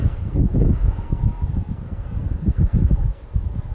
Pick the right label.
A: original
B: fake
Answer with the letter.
B